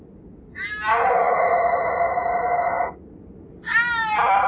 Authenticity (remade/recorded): recorded